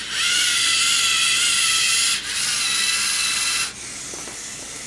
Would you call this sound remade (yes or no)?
no